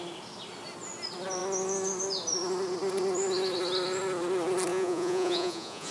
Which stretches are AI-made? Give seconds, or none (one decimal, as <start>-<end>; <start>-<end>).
4.7-5.9